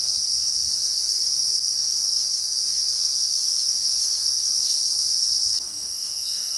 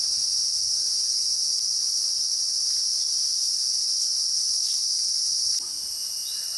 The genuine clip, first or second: second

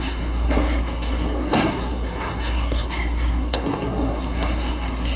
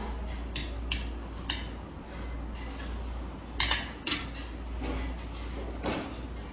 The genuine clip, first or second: second